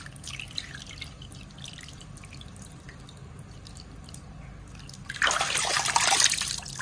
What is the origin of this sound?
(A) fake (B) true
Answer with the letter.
B